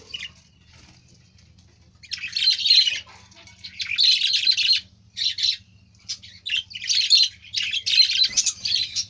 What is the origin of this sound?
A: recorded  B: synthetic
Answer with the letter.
A